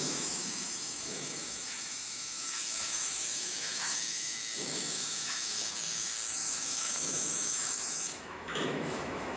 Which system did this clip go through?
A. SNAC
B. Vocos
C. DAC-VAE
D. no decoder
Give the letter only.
C